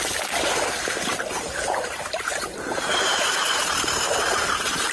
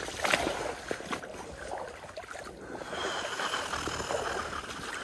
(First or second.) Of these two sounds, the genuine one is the second